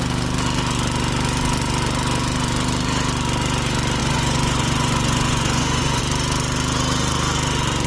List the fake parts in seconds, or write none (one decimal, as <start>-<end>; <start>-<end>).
4.0-6.0

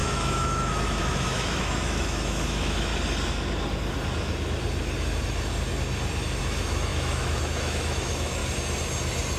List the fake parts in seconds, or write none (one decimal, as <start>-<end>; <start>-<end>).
0.0-2.9; 6.4-8.4

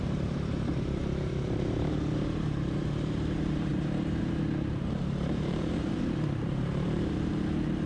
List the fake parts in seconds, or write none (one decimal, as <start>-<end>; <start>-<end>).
0.0-7.3

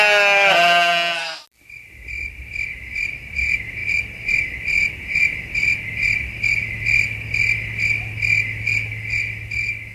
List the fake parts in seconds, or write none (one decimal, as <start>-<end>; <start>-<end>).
none

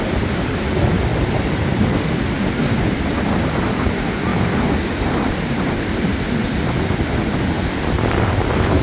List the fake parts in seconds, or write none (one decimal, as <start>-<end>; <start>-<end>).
4.3-7.4

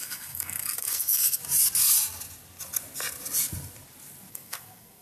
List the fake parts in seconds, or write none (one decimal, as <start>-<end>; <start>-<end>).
0.0-1.4; 4.3-5.0

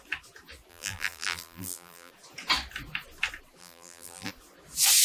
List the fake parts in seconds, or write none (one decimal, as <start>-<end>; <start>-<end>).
0.7-2.1; 3.6-4.3